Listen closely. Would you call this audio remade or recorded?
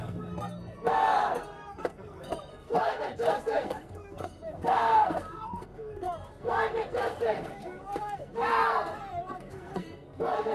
remade